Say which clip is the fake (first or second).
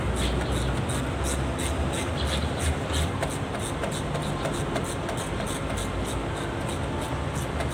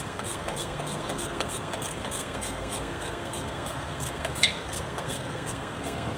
second